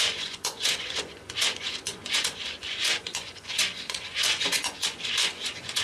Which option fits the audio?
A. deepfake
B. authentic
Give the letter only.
A